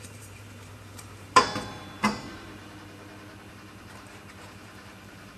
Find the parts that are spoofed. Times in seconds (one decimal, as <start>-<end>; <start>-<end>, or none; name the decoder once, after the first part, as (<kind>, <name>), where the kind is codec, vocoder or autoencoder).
0.0-2.6 (vocoder, BigVGAN v2); 3.5-5.4